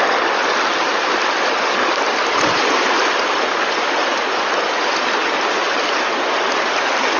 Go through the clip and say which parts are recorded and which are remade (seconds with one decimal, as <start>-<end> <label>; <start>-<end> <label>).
0.0-7.2 recorded